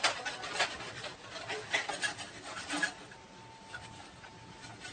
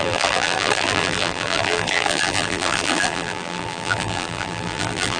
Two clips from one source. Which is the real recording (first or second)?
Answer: first